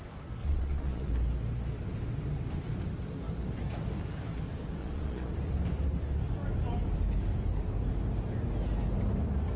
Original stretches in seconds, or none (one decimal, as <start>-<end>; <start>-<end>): 0.0-0.4; 1.1-4.8; 5.3-9.6